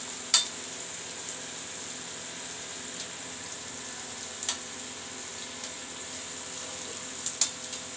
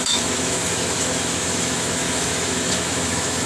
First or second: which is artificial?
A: second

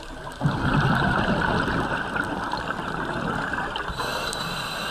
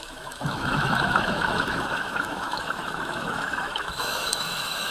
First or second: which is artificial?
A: second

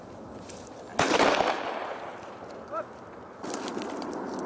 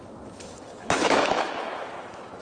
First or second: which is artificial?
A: second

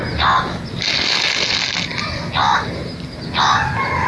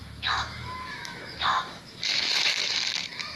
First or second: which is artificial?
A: second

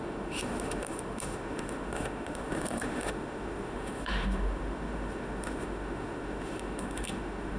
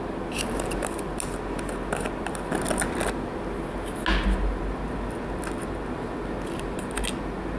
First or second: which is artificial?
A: first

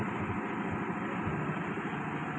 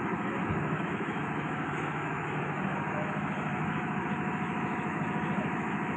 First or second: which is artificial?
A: second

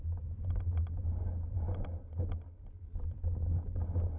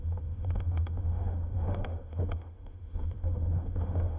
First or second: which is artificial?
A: second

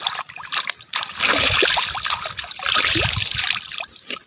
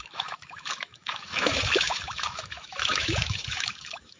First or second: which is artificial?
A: second